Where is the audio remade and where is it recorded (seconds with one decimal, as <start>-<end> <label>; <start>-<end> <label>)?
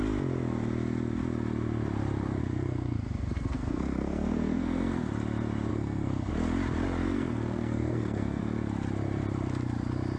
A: 0.0-2.4 recorded; 2.4-5.1 remade; 5.1-5.7 recorded; 5.7-6.3 remade; 6.3-7.0 recorded; 7.0-8.4 remade; 8.4-10.2 recorded